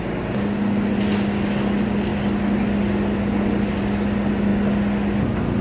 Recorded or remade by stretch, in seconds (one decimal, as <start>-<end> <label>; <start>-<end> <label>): 0.0-5.6 recorded